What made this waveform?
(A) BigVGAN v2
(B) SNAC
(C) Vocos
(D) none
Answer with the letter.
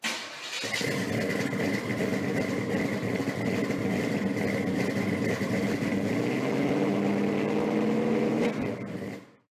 D